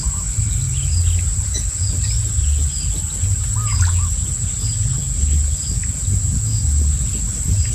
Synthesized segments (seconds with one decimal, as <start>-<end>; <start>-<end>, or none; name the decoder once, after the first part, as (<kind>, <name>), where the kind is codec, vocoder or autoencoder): none